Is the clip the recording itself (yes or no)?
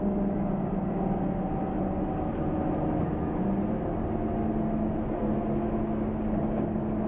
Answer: yes